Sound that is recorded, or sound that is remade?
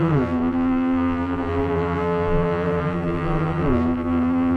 remade